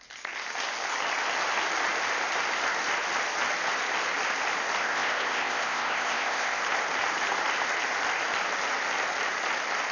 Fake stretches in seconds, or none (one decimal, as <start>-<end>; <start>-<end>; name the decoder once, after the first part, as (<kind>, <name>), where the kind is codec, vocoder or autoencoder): 4.8-6.6 (codec, ZipCodec)